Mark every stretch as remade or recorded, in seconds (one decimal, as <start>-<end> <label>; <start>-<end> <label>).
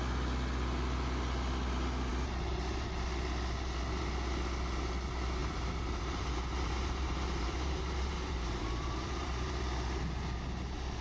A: 0.0-5.4 recorded; 5.4-9.6 remade; 9.6-11.0 recorded